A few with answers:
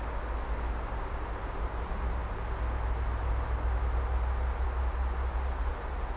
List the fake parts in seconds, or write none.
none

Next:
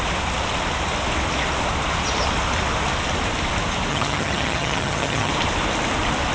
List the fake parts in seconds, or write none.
3.9-5.3 (vocoder, HiFi-GAN)

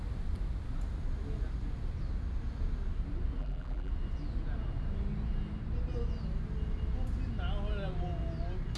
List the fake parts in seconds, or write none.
3.4-3.9 (vocoder, BigVGAN v2)

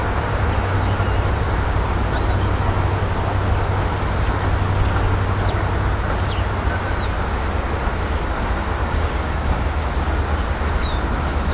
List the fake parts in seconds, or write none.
8.8-9.6 (codec, DAC)

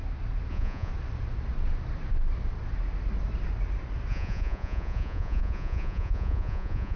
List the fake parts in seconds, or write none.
0.5-0.9 (vocoder, Vocos); 4.1-7.0

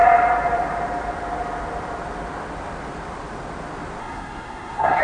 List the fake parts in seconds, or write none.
4.0-5.0 (codec, SNAC)

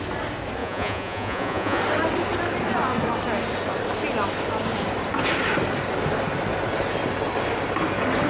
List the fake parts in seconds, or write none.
0.6-1.8 (vocoder, Vocos)

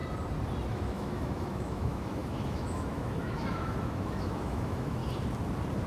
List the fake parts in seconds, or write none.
0.7-5.0 (autoencoder, DAC-VAE)